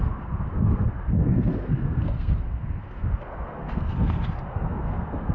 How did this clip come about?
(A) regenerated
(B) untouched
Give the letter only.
A